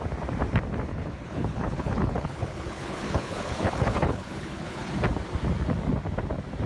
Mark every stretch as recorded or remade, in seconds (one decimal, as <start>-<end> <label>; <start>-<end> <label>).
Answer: 0.0-0.9 recorded; 0.9-4.9 remade; 4.9-6.7 recorded